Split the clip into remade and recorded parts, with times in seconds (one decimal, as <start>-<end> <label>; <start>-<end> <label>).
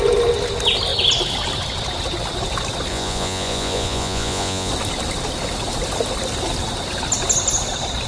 0.0-2.9 recorded; 2.9-4.7 remade; 4.7-8.1 recorded